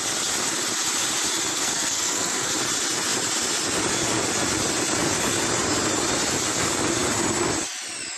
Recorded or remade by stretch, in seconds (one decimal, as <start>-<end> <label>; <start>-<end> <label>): 0.0-1.5 recorded; 1.5-2.5 remade; 2.5-8.2 recorded